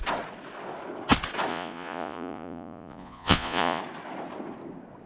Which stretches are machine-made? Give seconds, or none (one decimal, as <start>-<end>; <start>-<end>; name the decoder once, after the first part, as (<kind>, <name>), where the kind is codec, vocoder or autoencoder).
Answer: 1.5-3.8 (vocoder, Vocos)